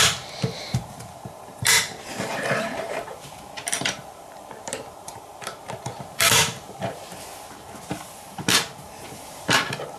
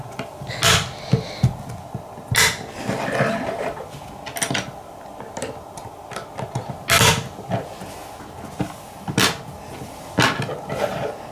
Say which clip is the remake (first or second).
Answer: first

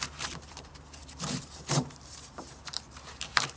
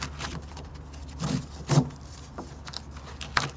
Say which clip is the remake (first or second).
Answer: first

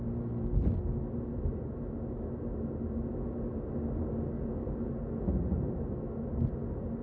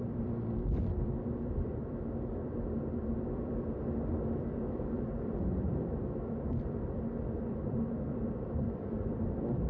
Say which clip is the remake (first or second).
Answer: second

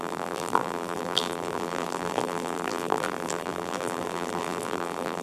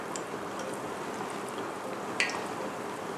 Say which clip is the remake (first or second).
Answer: first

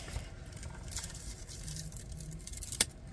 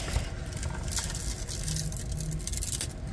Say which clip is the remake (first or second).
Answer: first